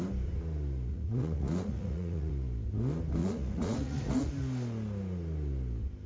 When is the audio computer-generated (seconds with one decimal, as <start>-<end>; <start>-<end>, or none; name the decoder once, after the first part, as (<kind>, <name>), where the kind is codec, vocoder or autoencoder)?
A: 0.9-2.3 (vocoder, Vocos); 3.2-4.3